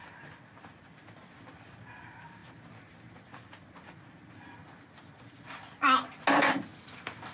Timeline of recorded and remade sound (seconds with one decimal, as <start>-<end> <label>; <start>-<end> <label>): 0.0-7.3 recorded